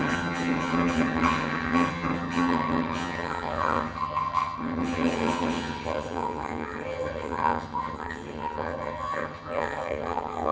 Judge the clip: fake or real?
fake